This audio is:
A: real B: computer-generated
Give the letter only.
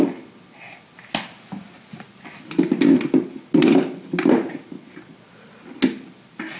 A